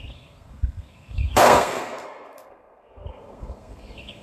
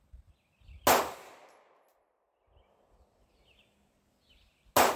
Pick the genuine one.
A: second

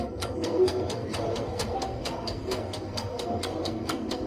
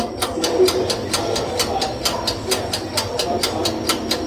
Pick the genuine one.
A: second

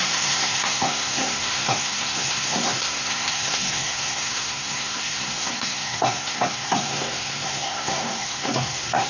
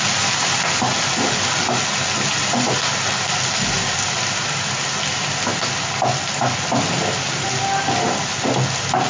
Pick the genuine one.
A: second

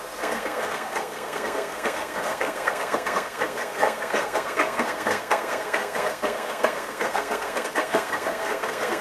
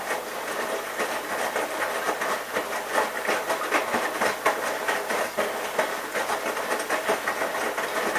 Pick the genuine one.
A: second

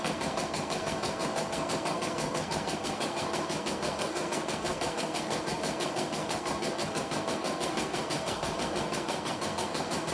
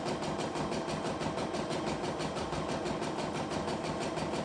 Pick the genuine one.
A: second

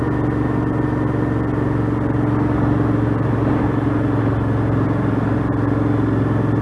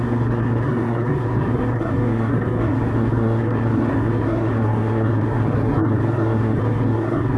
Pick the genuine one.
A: first